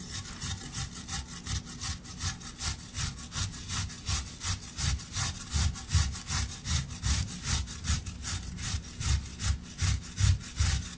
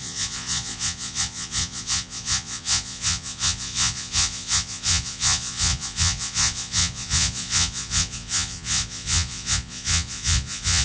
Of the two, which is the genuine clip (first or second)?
first